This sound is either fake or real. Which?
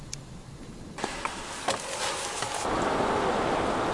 real